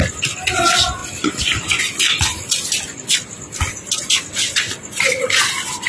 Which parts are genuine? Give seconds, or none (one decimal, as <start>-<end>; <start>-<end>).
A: 0.0-1.0; 1.8-5.9